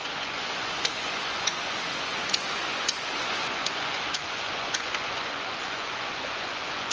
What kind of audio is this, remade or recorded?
remade